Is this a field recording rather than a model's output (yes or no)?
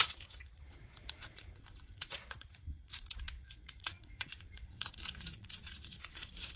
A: no